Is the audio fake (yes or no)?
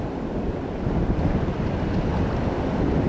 no